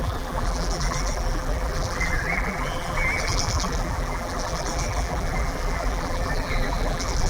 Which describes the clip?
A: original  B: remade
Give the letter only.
B